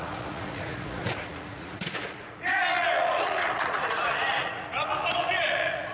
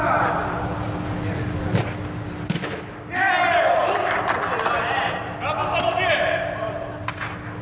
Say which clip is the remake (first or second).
first